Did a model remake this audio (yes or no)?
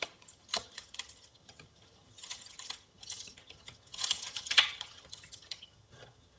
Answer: yes